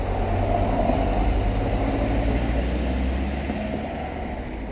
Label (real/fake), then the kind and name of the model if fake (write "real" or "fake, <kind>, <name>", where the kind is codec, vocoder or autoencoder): real